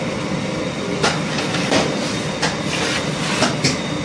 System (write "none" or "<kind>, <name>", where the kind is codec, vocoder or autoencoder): none